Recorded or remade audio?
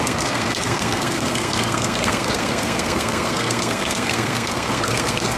remade